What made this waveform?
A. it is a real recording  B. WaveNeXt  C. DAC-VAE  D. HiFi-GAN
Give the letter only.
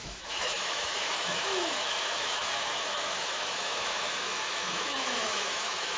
C